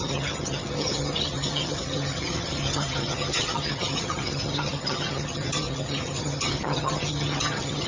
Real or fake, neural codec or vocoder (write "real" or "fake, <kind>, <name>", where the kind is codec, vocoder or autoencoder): fake, vocoder, HiFi-GAN